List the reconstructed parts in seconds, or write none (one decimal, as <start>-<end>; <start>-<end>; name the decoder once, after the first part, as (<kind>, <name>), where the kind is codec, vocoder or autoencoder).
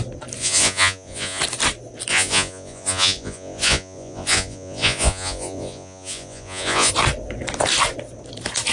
0.4-1.4 (vocoder, Vocos); 2.1-6.9